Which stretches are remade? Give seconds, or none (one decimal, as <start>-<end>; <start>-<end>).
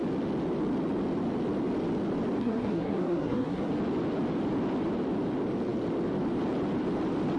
2.4-3.7